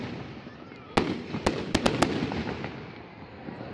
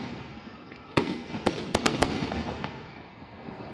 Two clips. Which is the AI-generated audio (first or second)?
second